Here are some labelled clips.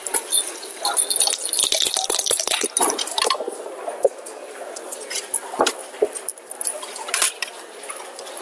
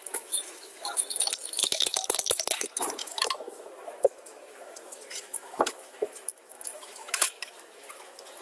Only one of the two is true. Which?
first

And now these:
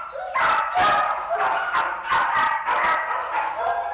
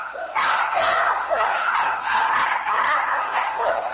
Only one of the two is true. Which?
first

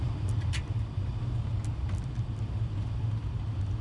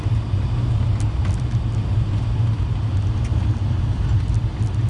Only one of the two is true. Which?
second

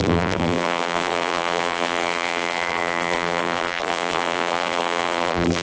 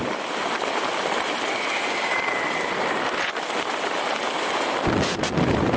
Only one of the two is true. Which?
second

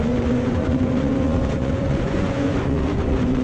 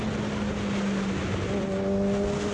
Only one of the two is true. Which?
second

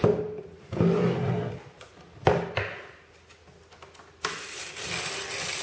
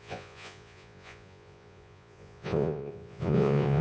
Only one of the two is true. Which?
first